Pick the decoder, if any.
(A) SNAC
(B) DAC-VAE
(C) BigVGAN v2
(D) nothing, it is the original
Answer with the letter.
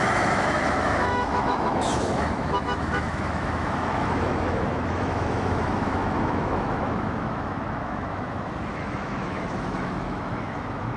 B